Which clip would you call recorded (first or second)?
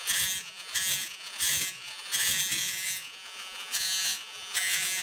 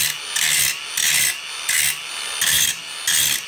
second